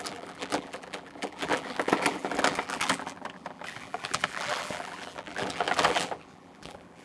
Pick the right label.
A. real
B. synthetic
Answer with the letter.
B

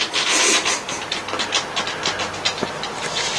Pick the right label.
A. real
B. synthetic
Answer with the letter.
A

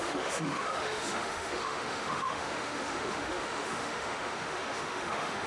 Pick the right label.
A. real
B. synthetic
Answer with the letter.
B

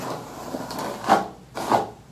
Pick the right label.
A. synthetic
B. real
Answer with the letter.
B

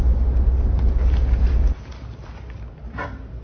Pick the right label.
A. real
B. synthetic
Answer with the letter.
A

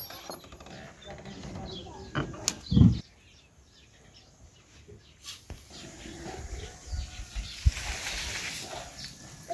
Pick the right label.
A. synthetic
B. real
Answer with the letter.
B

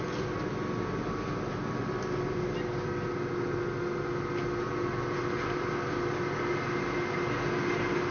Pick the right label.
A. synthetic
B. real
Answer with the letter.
B